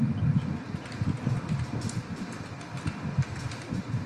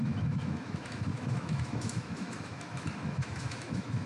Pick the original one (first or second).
first